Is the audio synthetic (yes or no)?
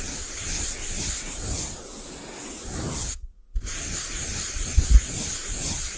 no